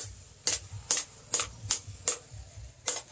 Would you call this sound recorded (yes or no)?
yes